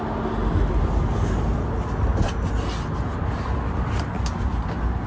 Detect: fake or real real